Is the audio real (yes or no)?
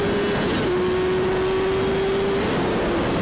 yes